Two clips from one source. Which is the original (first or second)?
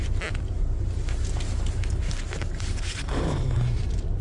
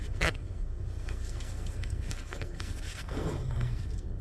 first